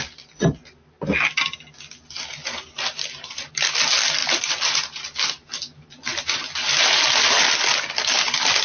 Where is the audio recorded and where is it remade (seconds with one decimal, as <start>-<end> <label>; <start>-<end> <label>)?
0.0-8.6 recorded